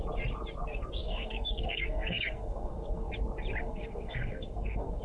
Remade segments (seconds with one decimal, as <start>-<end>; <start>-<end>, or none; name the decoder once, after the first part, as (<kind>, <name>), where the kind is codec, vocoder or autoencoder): 0.7-3.1 (codec, SNAC); 3.6-5.0